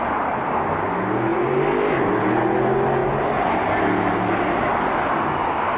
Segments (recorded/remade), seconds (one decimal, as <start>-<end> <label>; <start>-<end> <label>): 0.0-3.0 recorded; 3.0-3.8 remade; 3.8-5.8 recorded